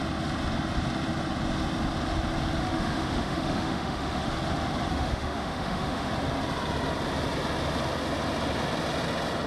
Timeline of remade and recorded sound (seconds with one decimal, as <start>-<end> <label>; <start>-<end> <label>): 0.0-2.6 recorded; 2.6-4.3 remade; 4.3-4.9 recorded; 4.9-6.1 remade; 6.1-9.5 recorded